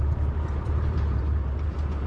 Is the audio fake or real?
fake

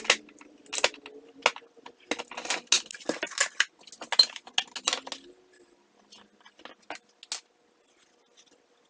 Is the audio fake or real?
real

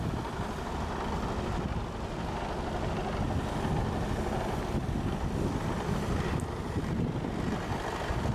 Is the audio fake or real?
real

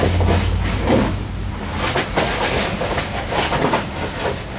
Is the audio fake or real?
real